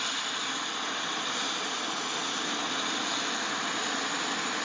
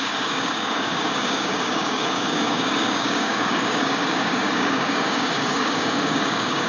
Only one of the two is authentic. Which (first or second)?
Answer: first